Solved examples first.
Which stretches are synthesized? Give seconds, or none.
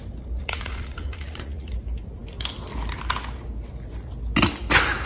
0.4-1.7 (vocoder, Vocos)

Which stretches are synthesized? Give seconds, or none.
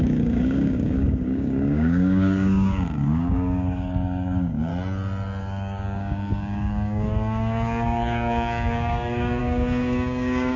0.0-4.7 (codec, DAC); 5.4-10.6